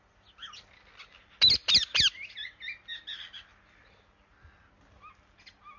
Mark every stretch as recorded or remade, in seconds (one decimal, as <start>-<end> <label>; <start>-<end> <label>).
0.0-5.8 recorded

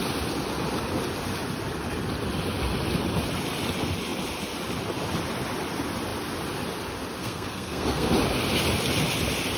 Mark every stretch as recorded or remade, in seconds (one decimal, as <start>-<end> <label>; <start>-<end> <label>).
0.0-7.2 recorded; 7.2-8.1 remade; 8.1-9.6 recorded

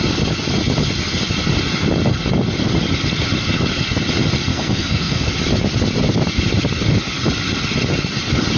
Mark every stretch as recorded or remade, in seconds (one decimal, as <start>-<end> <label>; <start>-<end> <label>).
0.0-4.5 recorded; 4.5-5.3 remade; 5.3-8.6 recorded

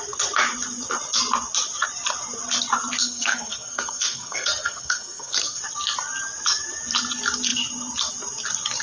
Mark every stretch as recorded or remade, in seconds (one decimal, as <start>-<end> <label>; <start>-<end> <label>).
0.0-3.0 recorded; 3.0-5.6 remade; 5.6-8.8 recorded

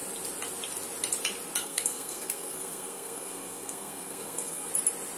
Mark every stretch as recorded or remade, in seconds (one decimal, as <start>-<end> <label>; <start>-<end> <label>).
0.0-1.6 recorded; 1.6-4.7 remade; 4.7-5.2 recorded

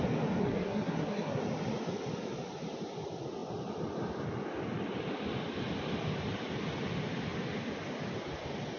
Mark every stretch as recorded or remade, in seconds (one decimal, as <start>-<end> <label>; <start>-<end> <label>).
0.0-0.4 recorded; 0.4-1.4 remade; 1.4-8.8 recorded

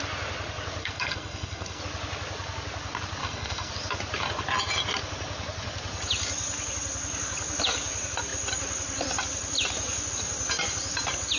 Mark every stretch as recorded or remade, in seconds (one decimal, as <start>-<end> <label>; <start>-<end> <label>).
0.0-0.8 recorded; 0.8-1.8 remade; 1.8-3.2 recorded; 3.2-3.7 remade; 3.7-11.4 recorded